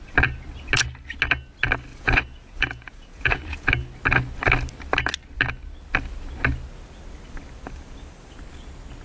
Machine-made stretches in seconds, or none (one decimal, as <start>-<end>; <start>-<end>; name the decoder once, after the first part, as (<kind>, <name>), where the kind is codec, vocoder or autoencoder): 1.9-3.7 (vocoder, Vocos)